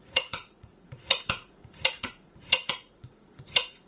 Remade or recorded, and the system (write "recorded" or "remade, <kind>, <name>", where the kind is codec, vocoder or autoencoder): remade, vocoder, Vocos